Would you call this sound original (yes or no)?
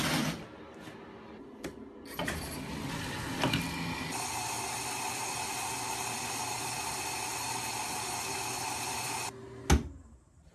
yes